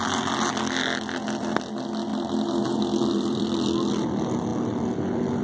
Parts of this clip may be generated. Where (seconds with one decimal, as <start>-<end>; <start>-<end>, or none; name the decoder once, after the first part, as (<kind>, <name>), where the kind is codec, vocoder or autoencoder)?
2.1-3.9 (vocoder, BigVGAN v2)